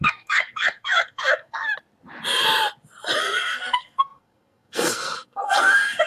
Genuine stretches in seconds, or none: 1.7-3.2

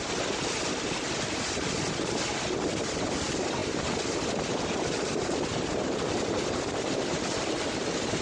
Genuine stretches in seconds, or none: 0.0-8.2